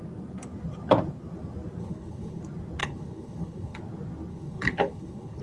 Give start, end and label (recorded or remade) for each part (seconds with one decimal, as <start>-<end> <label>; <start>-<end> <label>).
0.0-1.8 recorded; 1.8-2.4 remade; 2.4-2.8 recorded; 2.8-3.8 remade; 3.8-4.3 recorded; 4.3-5.4 remade